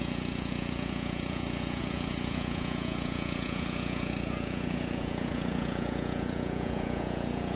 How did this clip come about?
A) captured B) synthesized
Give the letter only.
B